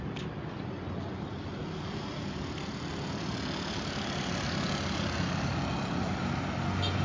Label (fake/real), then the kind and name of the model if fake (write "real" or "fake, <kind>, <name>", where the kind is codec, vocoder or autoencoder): real